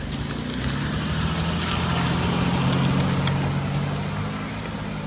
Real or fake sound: real